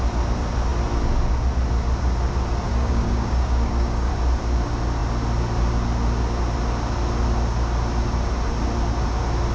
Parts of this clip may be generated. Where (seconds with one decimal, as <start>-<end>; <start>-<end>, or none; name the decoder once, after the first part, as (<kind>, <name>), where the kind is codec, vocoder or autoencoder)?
2.7-4.1 (codec, DAC)